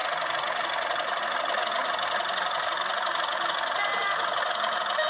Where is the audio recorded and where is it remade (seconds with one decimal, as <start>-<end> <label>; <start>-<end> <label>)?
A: 0.0-1.8 recorded; 1.8-5.1 remade